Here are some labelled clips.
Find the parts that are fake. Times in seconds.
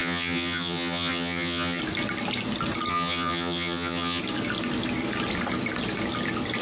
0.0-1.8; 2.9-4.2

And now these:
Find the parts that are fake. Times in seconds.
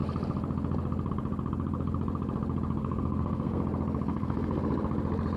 2.8-3.6; 4.1-4.6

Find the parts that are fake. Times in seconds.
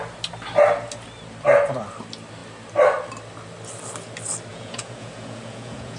4.5-6.0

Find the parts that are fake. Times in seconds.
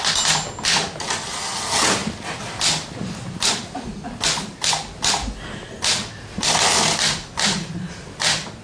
none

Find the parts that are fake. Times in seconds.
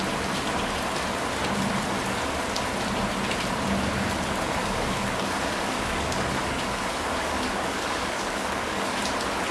4.6-9.0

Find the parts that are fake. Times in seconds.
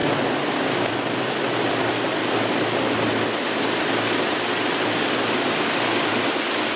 none